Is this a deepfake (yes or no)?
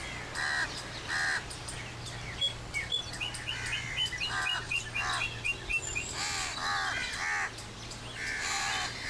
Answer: no